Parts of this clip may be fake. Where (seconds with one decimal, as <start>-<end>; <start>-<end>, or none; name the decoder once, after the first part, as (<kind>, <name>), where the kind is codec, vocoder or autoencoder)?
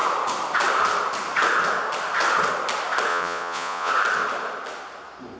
3.1-3.9 (vocoder, Vocos)